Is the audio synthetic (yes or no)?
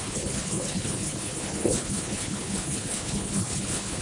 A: yes